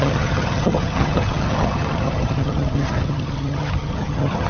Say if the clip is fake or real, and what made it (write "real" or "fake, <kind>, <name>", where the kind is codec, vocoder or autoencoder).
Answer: fake, vocoder, HiFi-GAN